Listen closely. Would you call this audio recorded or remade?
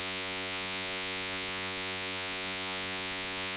remade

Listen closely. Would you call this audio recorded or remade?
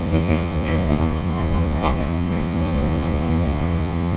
remade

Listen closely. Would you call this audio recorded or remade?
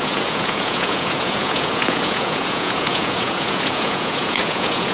remade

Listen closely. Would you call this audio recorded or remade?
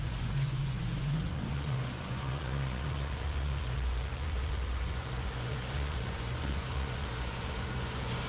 remade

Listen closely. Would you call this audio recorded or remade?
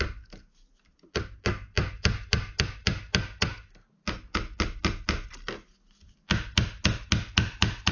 recorded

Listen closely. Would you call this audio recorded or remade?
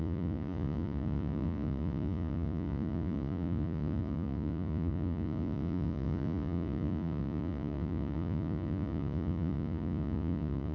remade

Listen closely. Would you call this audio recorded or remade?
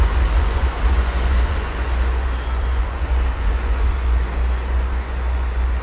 remade